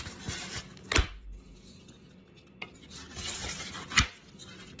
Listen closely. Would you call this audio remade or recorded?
recorded